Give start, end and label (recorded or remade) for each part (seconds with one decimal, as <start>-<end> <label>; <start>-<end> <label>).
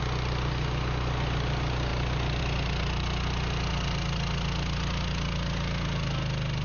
0.0-6.6 recorded